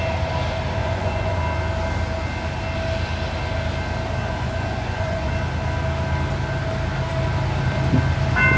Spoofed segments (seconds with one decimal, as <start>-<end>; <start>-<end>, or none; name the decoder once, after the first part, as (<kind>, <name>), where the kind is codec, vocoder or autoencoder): 0.8-1.4 (vocoder, Vocos); 4.2-5.3